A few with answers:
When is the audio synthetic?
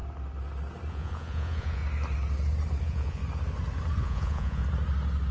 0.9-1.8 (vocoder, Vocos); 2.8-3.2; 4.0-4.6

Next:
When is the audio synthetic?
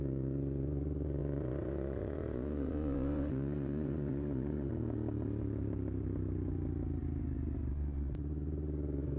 0.0-4.7 (vocoder, Vocos); 7.7-9.2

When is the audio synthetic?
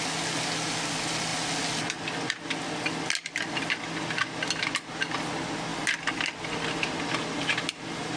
none